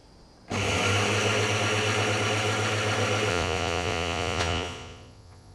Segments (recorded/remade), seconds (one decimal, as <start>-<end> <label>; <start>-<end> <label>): 0.0-3.3 recorded; 3.3-5.5 remade